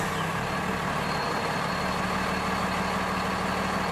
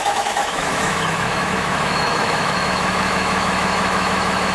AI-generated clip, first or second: second